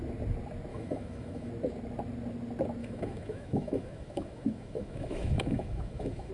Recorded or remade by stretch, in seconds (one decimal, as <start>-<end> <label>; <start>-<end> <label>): 0.0-0.7 recorded; 0.7-1.5 remade; 1.5-2.8 recorded; 2.8-6.3 remade